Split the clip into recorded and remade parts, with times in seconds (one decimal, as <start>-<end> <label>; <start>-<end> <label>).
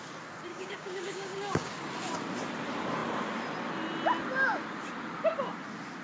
0.0-0.5 recorded; 0.5-1.7 remade; 1.7-6.0 recorded